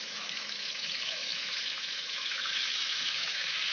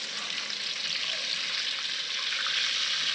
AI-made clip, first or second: first